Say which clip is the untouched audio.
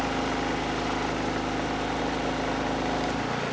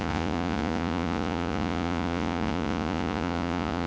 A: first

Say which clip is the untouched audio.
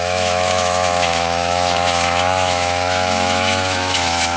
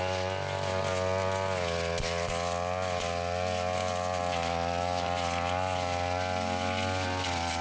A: second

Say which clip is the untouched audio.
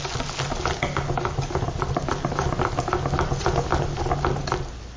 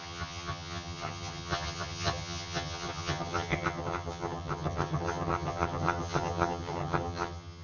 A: first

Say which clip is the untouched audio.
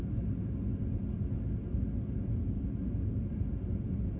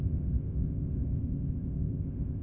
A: first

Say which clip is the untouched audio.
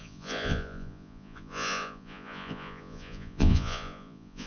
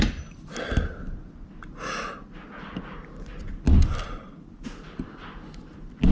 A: second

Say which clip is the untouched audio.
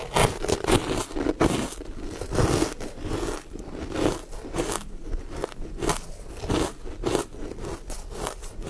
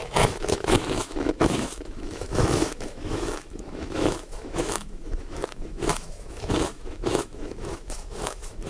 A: first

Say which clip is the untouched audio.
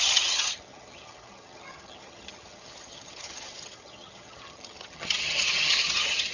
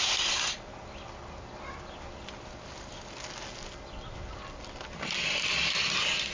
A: second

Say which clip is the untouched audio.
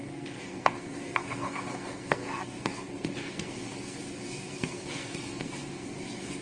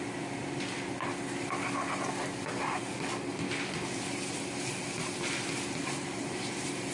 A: second